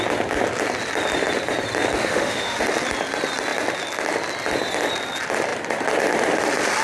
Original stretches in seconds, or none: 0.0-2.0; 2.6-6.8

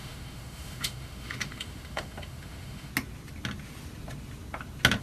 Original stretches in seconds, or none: 2.9-5.0